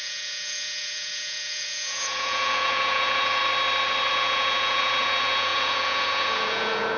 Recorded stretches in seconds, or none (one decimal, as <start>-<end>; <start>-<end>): 3.4-4.1